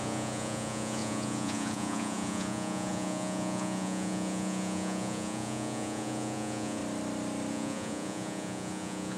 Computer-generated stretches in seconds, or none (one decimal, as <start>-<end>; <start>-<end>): 0.0-6.8; 7.5-9.2